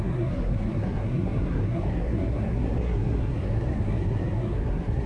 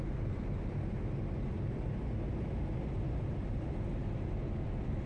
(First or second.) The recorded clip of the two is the second